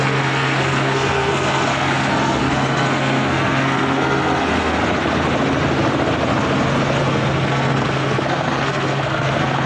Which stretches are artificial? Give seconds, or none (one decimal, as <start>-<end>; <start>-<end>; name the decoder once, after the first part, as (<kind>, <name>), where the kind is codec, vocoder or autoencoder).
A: 0.0-4.8 (codec, SNAC); 7.0-9.7